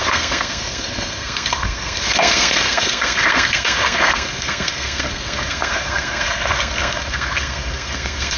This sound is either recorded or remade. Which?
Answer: remade